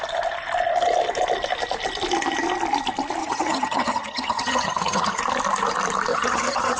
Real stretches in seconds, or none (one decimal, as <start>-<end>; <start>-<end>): 0.0-3.2; 5.2-6.1